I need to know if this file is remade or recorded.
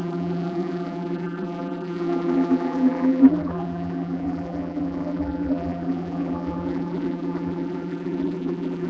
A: remade